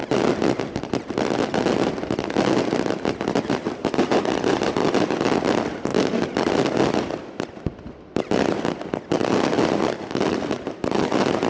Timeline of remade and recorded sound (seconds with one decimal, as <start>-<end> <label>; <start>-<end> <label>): 0.0-3.5 recorded; 3.5-5.9 remade; 5.9-6.5 recorded; 6.5-11.5 remade